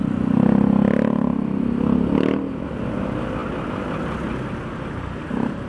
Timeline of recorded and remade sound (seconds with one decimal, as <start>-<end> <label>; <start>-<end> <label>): 0.0-5.7 recorded